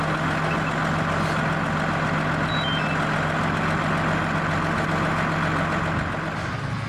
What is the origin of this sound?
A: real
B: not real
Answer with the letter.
A